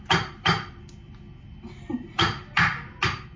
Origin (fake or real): real